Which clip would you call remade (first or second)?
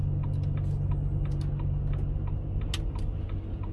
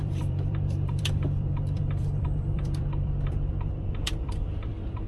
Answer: second